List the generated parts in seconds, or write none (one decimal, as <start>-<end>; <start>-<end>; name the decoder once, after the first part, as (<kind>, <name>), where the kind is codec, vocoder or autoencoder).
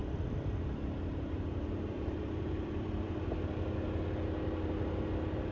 0.0-3.3 (vocoder, BigVGAN v2)